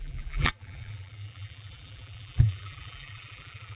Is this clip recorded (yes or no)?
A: no